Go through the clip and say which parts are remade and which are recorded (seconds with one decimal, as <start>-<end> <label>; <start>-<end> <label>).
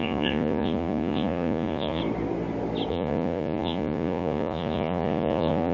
0.0-2.0 remade; 2.0-2.9 recorded; 2.9-5.7 remade